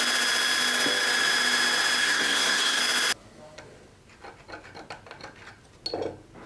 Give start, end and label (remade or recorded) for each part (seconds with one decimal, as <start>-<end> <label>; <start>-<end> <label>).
0.0-2.0 recorded; 2.0-2.8 remade; 2.8-6.5 recorded